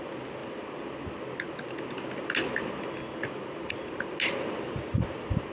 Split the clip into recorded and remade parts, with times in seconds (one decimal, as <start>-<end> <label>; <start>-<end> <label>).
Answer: 0.0-5.5 recorded